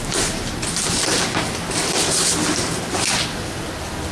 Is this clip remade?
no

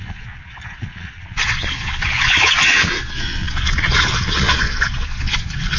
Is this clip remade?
yes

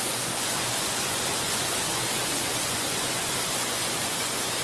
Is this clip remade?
yes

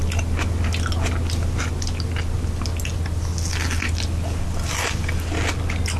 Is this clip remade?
no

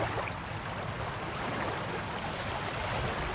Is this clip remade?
no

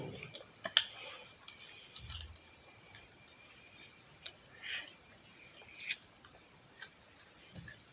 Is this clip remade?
no